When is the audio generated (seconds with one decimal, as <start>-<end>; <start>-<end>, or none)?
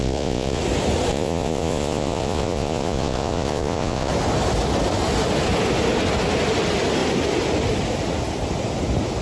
0.0-0.6; 1.1-4.1